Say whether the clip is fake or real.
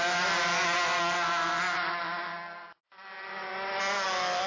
real